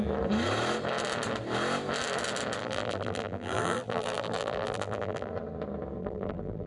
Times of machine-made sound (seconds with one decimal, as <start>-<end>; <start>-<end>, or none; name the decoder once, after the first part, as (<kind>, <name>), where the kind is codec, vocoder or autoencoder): 2.6-5.3 (vocoder, BigVGAN v2); 6.0-6.7